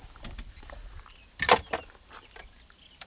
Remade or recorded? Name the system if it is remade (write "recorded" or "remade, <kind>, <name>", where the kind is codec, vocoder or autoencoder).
remade, vocoder, BigVGAN v2